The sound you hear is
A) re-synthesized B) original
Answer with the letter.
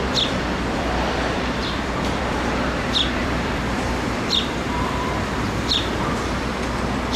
A